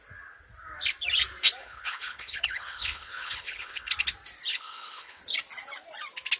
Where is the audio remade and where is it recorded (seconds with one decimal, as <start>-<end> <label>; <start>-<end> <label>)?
0.0-1.6 recorded; 1.6-3.9 remade; 3.9-4.5 recorded; 4.5-5.2 remade; 5.2-6.4 recorded